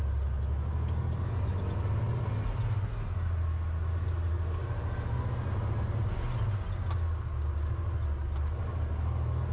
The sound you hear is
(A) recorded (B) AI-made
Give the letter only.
A